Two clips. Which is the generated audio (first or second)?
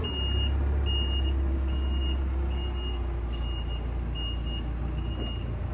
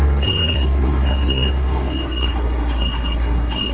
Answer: second